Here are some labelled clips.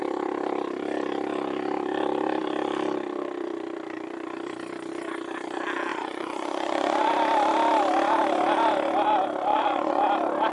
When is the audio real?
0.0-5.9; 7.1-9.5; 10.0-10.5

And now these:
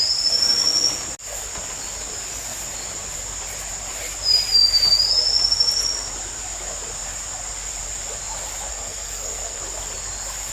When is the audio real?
0.0-8.7; 9.6-10.5

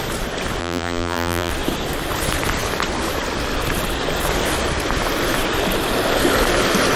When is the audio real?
0.0-0.6; 1.5-7.0

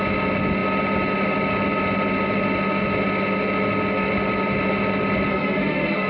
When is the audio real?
0.0-5.3

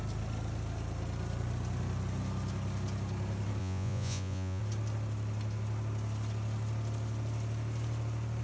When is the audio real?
0.0-3.6; 4.6-8.4

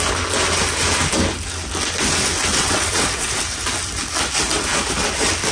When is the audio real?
0.0-2.5; 3.4-5.5

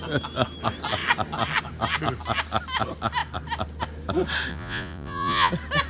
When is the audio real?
0.0-4.5; 5.5-5.9